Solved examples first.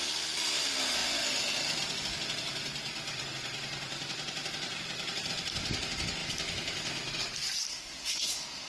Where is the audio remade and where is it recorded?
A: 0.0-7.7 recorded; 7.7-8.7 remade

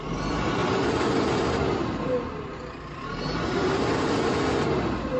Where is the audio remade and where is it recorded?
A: 0.0-5.2 recorded

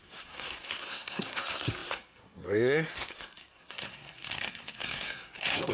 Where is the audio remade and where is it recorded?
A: 0.0-5.7 remade